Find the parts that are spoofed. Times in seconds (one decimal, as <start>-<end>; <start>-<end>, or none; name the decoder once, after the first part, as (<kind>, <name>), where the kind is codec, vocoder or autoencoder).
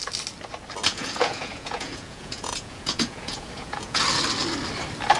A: 0.9-4.0 (vocoder, Vocos)